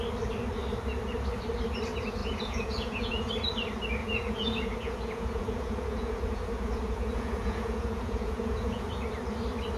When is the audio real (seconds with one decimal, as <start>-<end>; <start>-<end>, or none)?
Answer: 0.0-2.2; 3.3-4.0; 8.9-9.8